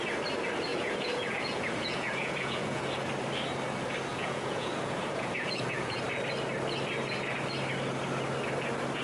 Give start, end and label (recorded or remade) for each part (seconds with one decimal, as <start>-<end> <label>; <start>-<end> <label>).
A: 0.0-0.7 recorded; 0.7-2.8 remade; 2.8-4.1 recorded; 4.1-6.0 remade; 6.0-9.0 recorded